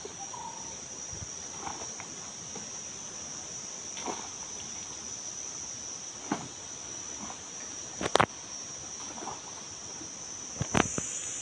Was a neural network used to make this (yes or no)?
no